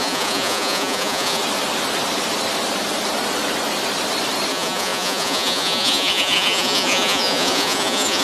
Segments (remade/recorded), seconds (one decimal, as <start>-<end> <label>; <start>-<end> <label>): 0.0-1.4 remade; 1.4-4.5 recorded; 4.5-8.2 remade